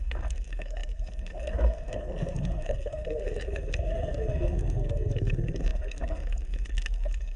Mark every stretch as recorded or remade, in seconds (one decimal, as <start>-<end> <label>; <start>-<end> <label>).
0.0-7.4 remade